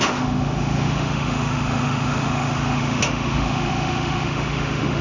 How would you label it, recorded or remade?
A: remade